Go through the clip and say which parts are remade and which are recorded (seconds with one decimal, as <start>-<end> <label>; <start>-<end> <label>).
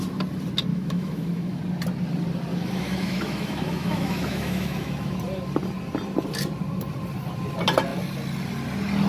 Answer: 0.0-0.7 recorded; 0.7-1.6 remade; 1.6-2.5 recorded; 2.5-5.2 remade; 5.2-9.1 recorded